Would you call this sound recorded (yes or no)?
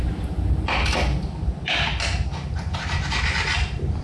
yes